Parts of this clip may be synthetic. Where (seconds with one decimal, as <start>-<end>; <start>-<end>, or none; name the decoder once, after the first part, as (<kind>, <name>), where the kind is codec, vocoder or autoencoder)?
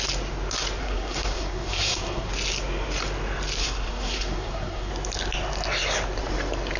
0.8-2.3 (codec, SNAC); 3.6-4.9